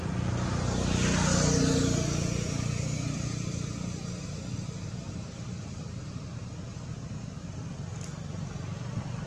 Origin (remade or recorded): recorded